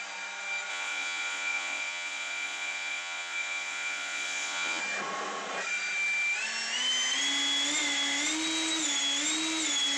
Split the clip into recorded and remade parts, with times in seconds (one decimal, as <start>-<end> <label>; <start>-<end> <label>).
0.0-0.7 recorded; 0.7-4.8 remade; 4.8-10.0 recorded